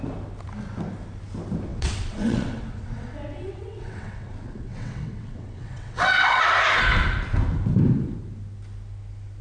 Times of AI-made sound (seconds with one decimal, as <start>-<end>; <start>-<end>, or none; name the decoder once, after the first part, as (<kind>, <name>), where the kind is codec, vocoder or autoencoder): 1.7-6.4 (vocoder, WaveNeXt)